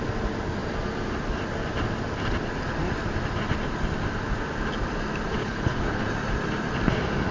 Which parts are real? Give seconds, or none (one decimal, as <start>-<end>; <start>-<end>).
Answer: 0.0-5.4; 6.0-7.3